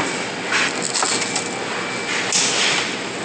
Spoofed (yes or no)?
no